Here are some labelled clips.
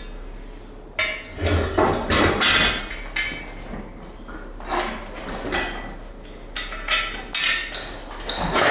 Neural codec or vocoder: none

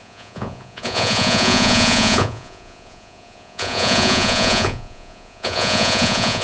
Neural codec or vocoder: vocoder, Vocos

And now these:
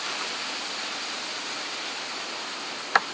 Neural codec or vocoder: none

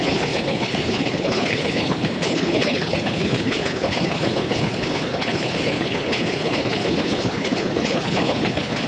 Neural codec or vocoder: codec, HILCodec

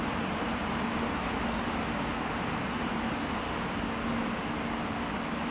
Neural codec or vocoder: none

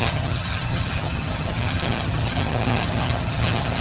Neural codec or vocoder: vocoder, HiFi-GAN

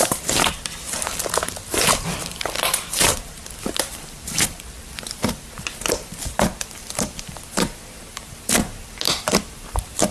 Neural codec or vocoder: vocoder, BigVGAN v2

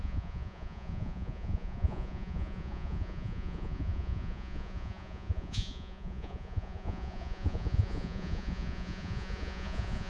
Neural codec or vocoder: vocoder, Vocos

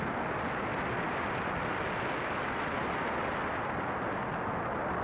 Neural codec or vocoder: none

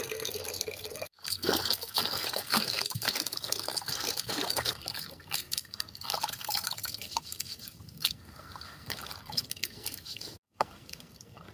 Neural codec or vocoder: codec, SNAC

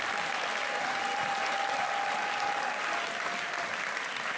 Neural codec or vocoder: none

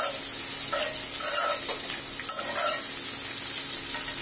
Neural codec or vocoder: none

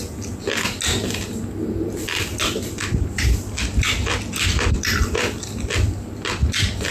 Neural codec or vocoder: none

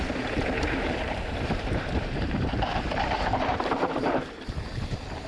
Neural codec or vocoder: vocoder, BigVGAN v2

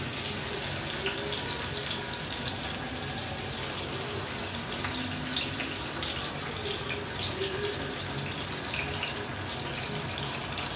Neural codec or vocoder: none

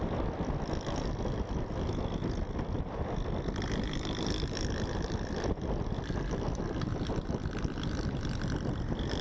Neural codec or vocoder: none